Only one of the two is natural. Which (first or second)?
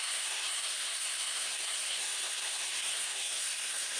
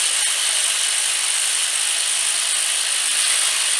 second